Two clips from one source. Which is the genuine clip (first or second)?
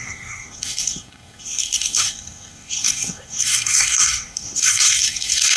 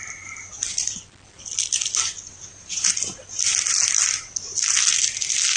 second